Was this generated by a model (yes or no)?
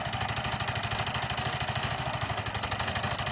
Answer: no